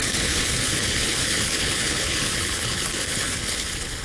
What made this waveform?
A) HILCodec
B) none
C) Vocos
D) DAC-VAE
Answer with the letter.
A